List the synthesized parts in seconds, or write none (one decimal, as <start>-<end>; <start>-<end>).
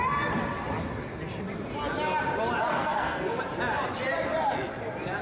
2.7-3.4